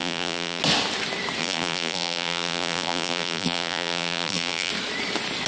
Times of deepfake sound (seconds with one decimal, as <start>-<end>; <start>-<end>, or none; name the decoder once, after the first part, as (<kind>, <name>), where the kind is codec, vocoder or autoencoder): 0.0-0.6 (vocoder, BigVGAN v2); 1.4-4.7